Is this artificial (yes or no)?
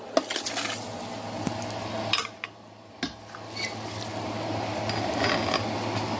no